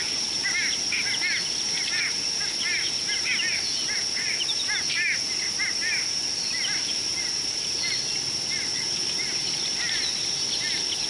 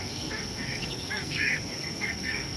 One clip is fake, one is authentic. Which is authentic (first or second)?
first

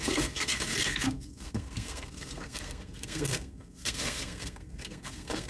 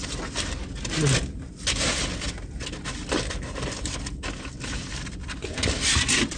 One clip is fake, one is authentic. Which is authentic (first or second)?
second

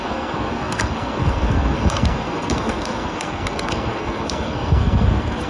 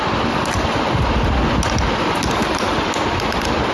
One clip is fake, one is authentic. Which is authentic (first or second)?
second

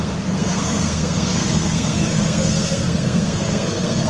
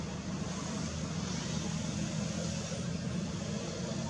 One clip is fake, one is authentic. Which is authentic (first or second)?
second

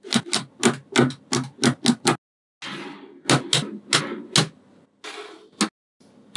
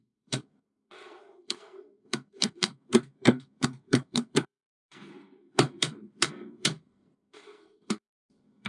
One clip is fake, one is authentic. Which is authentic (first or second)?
first